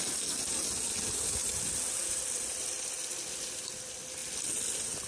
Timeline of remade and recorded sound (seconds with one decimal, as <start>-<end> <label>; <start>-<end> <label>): 0.0-5.1 recorded